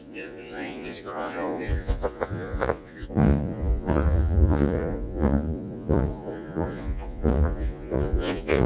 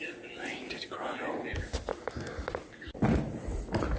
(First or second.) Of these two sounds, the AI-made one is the first